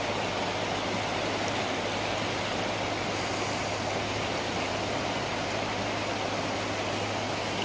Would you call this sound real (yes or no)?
yes